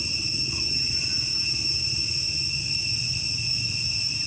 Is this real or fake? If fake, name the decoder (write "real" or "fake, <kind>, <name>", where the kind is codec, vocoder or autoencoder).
real